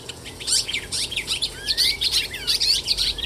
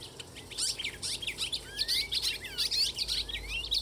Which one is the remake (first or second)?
first